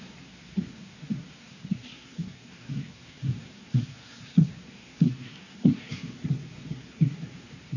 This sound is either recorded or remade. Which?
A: remade